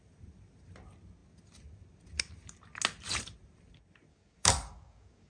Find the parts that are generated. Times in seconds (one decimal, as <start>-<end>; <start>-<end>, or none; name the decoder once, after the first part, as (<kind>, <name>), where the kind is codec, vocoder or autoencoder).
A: 4.1-5.3 (codec, DAC)